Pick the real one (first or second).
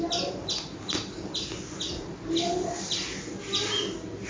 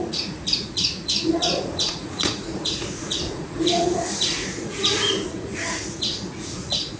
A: first